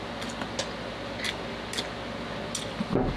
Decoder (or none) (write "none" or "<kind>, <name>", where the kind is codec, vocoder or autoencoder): none